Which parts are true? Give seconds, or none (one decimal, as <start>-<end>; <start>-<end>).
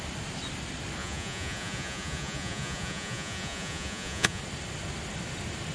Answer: 0.0-1.0; 4.4-5.7